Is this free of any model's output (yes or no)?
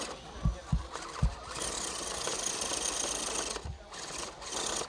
yes